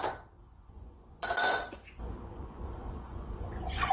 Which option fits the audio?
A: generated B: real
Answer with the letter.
A